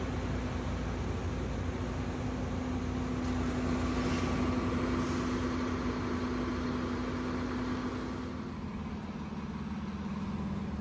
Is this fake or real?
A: real